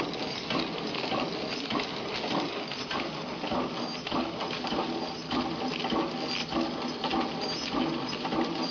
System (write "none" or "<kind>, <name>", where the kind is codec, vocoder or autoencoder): none